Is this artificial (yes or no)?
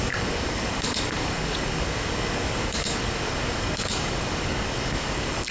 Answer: yes